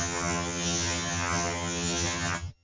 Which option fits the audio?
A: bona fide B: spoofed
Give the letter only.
B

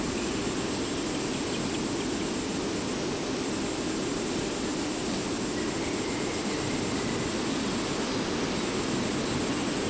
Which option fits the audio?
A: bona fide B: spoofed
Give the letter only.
A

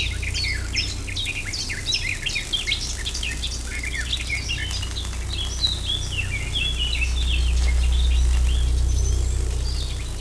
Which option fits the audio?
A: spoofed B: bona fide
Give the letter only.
B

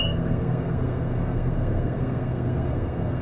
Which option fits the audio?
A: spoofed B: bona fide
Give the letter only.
A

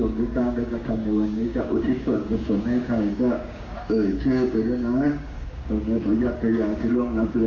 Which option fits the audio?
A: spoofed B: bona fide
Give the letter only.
A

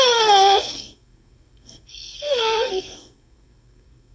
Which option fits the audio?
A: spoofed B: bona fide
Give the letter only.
A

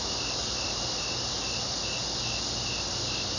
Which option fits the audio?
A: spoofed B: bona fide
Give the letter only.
B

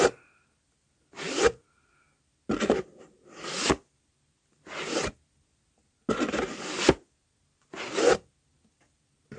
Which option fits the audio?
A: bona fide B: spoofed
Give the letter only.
A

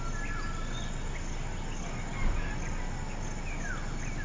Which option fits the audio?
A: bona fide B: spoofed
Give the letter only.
A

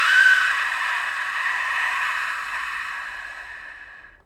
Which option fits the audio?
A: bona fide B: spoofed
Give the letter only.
B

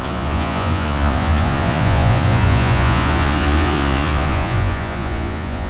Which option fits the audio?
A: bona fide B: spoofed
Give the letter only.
B